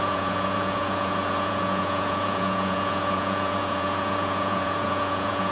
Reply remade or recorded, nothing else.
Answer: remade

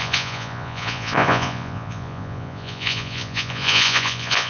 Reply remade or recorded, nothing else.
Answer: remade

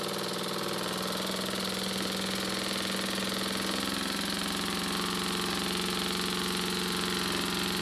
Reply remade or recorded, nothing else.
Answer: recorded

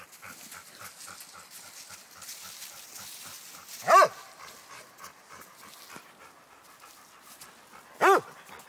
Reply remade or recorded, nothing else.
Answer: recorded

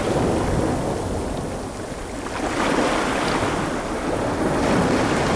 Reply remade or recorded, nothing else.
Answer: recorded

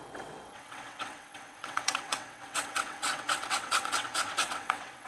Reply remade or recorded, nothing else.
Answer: remade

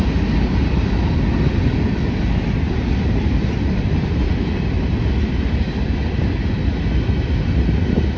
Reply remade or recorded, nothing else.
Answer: recorded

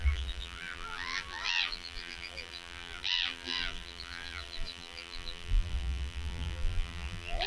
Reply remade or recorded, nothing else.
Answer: remade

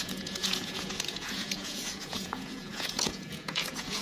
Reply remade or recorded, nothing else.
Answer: remade